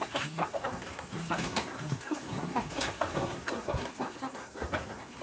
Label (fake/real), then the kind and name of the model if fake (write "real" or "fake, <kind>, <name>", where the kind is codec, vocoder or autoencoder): fake, codec, SNAC